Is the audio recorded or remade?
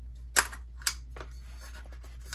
recorded